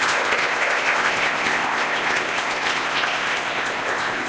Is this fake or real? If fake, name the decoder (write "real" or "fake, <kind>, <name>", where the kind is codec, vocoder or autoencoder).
fake, codec, ZipCodec